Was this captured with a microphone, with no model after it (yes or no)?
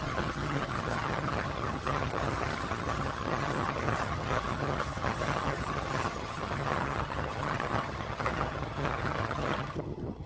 no